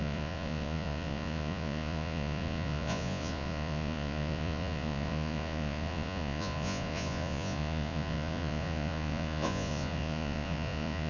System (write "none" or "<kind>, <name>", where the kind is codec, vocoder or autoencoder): vocoder, Vocos